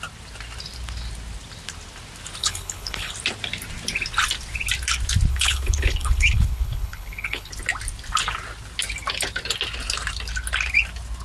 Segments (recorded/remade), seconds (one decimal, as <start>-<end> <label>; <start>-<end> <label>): 0.0-2.4 recorded; 2.4-3.1 remade; 3.1-5.3 recorded; 5.3-7.5 remade; 7.5-11.2 recorded